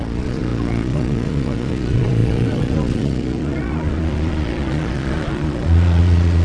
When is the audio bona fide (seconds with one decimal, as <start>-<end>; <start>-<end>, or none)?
none